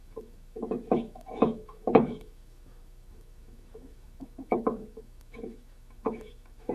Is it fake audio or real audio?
fake